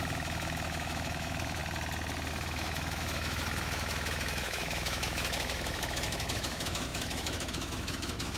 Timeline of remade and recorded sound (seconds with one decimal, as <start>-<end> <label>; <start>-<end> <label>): 0.0-1.6 remade; 1.6-2.3 recorded; 2.3-8.4 remade